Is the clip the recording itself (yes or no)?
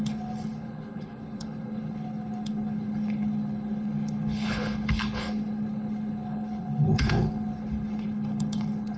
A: no